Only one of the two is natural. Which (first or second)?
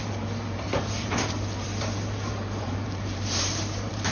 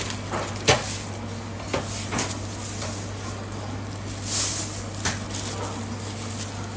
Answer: second